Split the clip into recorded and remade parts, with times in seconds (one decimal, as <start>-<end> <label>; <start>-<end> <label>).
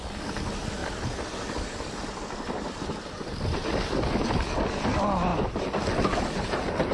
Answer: 0.0-6.9 recorded